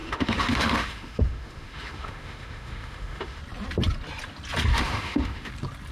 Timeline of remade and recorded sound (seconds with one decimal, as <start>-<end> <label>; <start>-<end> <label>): 0.0-3.4 remade; 3.4-4.7 recorded; 4.7-5.5 remade; 5.5-5.9 recorded